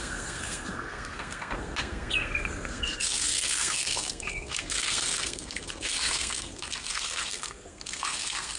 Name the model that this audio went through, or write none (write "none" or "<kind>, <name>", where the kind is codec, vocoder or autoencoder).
codec, SNAC